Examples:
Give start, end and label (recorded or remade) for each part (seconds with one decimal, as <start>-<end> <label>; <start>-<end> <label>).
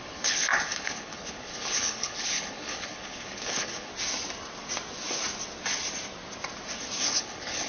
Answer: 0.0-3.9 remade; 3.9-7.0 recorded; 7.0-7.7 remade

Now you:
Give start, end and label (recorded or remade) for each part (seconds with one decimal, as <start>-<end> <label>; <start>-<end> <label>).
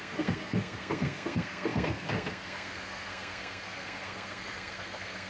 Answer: 0.0-5.3 remade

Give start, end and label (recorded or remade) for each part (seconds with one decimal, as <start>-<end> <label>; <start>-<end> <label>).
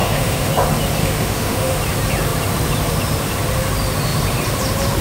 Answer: 0.0-0.5 remade; 0.5-1.0 recorded; 1.0-1.8 remade; 1.8-5.0 recorded